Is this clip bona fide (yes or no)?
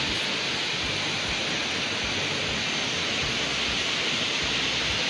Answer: yes